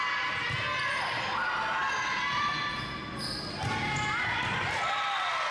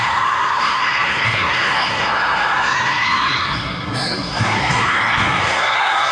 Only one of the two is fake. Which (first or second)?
second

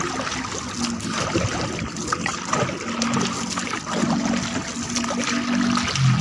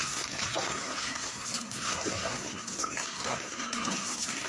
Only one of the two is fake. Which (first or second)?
second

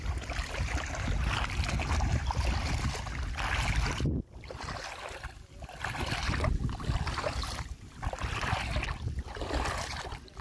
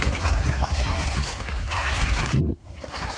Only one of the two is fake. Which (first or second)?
second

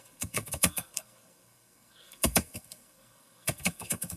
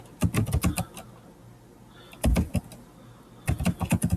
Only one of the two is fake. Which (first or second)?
first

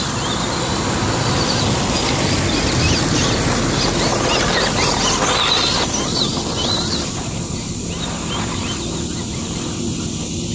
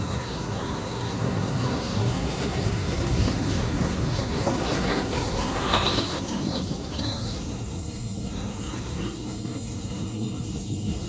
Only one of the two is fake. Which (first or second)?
second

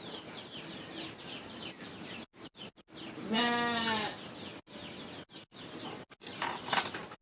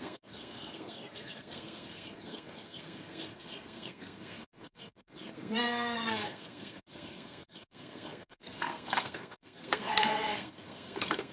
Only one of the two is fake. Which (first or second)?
second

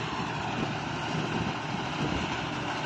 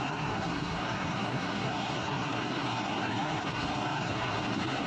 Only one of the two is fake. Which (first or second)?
second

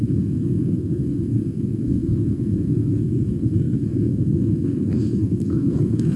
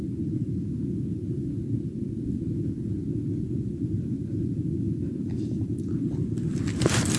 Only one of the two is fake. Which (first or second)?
first